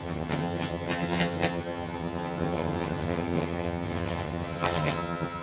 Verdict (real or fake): fake